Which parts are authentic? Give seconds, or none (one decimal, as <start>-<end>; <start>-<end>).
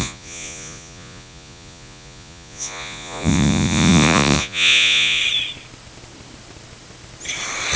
5.2-7.8